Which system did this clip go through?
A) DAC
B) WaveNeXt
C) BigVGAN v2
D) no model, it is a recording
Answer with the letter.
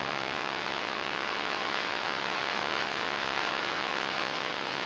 B